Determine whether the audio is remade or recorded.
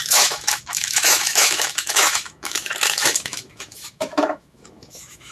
remade